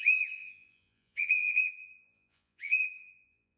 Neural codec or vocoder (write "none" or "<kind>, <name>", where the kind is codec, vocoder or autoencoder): vocoder, Vocos